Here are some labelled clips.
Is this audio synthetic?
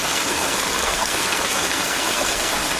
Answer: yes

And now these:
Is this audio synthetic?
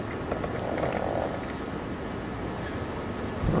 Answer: no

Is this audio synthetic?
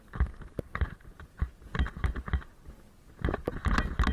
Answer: no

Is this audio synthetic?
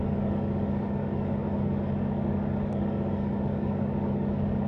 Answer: yes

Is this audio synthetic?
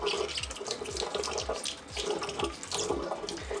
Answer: no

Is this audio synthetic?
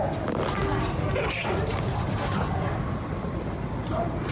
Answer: no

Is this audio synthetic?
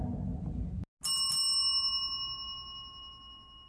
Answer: no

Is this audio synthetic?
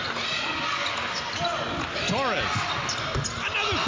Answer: no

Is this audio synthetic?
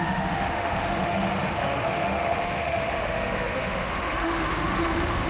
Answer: yes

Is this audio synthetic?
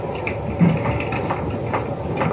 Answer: no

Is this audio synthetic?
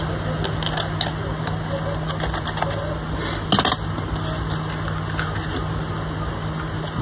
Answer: no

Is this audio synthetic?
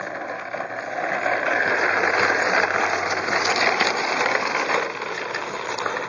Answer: no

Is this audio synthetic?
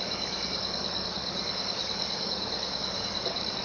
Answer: yes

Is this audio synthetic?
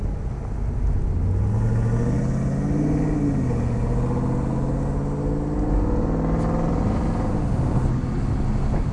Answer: no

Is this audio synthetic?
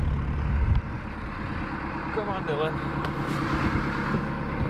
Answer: no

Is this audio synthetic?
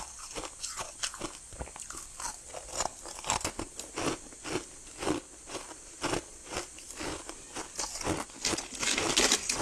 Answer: no